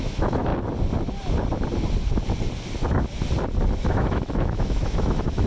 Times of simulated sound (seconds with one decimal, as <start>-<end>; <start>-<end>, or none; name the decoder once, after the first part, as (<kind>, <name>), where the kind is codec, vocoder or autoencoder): 0.0-0.5 (autoencoder, DAC-VAE); 3.8-5.5